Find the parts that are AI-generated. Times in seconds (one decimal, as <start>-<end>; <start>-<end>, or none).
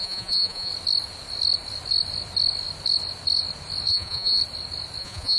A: 0.0-0.7; 3.9-4.4; 5.0-5.4